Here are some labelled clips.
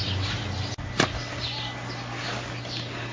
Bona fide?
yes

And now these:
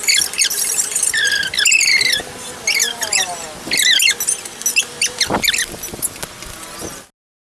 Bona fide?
yes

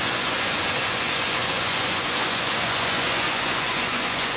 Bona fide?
no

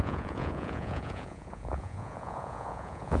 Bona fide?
no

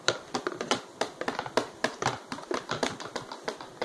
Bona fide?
yes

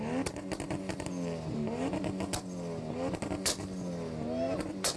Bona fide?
yes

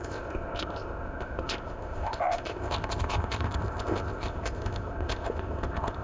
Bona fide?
no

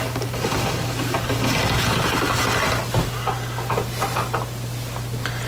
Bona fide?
yes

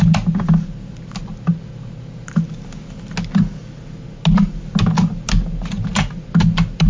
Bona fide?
yes